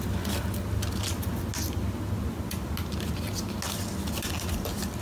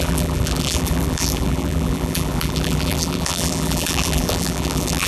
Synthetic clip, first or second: second